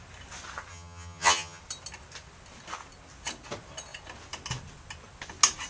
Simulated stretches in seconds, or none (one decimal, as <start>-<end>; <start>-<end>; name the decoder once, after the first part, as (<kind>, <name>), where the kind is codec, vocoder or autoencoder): 0.7-1.6 (vocoder, HiFi-GAN)